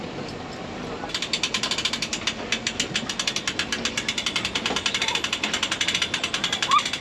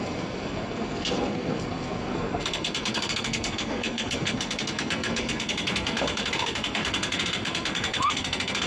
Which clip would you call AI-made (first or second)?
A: second